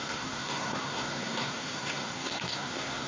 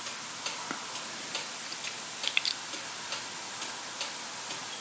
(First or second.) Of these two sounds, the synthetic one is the first